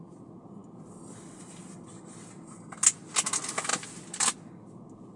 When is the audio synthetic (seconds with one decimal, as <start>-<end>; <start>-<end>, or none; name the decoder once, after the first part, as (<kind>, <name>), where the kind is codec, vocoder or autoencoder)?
none